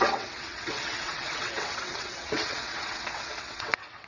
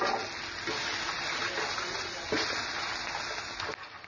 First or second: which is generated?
first